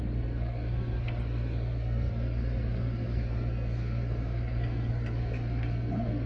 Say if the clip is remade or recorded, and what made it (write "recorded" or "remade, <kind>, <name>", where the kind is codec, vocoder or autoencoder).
remade, codec, SNAC